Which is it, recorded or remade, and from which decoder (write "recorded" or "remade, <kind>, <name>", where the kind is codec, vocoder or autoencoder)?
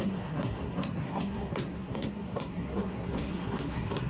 remade, codec, SNAC